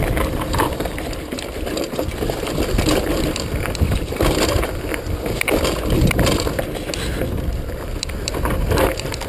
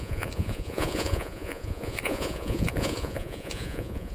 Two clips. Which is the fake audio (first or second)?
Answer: second